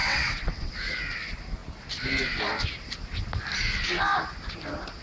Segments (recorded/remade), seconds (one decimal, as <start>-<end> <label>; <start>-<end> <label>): 0.0-0.7 remade; 0.7-5.0 recorded